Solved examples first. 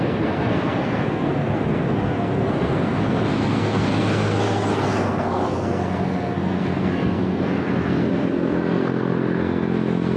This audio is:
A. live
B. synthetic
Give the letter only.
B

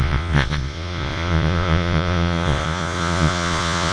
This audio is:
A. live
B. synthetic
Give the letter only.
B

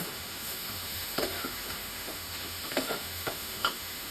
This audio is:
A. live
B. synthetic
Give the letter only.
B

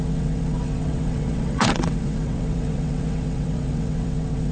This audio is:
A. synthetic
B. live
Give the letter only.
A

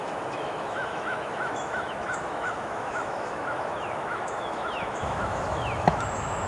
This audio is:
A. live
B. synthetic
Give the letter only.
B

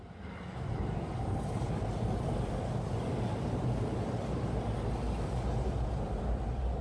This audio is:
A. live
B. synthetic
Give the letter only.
A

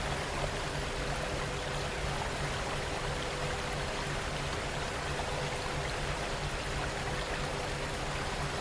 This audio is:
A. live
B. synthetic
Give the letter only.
A